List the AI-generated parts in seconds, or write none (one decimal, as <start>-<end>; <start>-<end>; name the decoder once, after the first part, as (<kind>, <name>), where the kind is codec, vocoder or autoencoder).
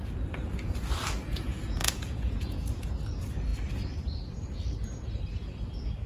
1.3-2.9 (vocoder, Vocos)